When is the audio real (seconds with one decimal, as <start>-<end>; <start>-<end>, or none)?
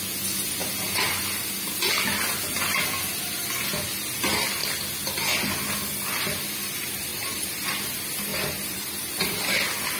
0.0-0.6; 1.2-7.1; 7.7-8.3; 9.5-10.0